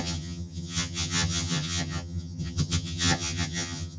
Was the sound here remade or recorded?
remade